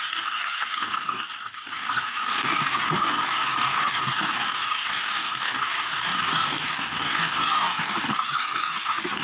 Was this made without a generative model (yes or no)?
no